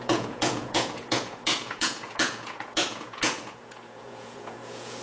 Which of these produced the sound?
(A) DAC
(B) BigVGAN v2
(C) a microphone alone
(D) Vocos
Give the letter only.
D